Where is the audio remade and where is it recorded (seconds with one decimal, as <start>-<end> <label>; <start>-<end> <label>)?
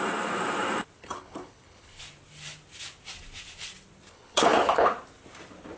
0.0-1.0 recorded; 1.0-2.0 remade; 2.0-4.1 recorded; 4.1-4.9 remade; 4.9-5.8 recorded